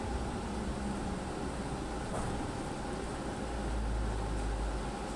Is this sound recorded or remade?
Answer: recorded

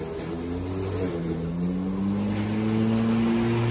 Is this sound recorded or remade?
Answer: recorded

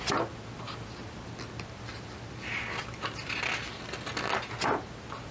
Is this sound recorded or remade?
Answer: recorded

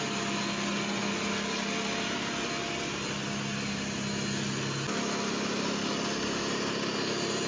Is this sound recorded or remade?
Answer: recorded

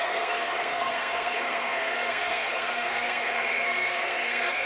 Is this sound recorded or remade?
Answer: remade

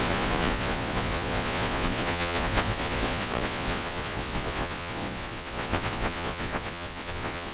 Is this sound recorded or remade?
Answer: remade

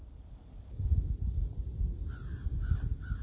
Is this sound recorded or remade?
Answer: recorded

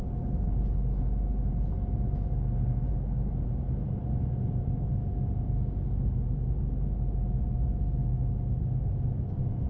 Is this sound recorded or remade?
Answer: recorded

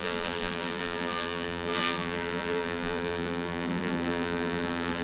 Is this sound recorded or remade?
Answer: remade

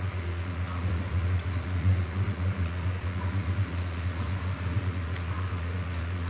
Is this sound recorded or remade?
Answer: remade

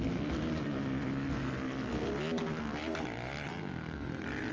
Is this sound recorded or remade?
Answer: recorded